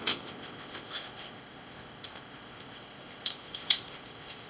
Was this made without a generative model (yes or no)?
no